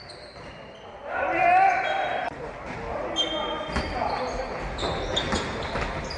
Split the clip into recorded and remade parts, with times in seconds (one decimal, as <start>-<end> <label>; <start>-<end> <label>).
0.0-6.2 recorded